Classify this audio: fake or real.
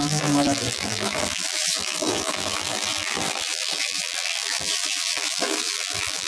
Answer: fake